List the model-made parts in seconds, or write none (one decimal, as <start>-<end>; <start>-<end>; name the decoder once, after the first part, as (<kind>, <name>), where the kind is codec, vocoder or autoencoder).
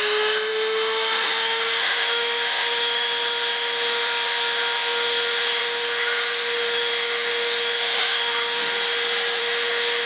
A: 0.0-8.6 (autoencoder, DAC-VAE); 9.4-10.1